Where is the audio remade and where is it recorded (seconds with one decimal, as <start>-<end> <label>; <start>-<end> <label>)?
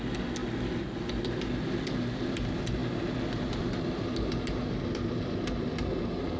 0.0-6.4 recorded